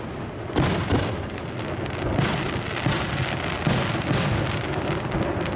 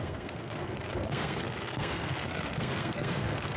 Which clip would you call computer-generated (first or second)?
second